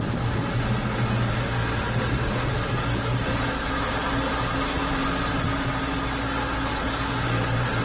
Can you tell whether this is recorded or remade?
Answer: recorded